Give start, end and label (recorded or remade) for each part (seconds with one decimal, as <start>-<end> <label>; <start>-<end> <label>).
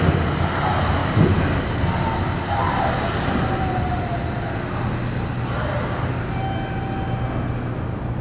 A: 0.0-8.2 recorded